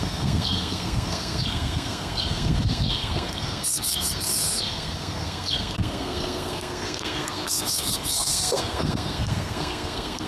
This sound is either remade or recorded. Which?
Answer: remade